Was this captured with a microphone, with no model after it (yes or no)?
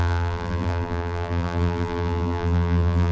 no